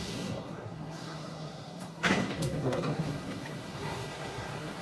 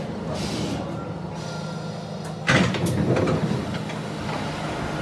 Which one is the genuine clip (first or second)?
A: second